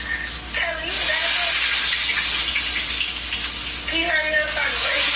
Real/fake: real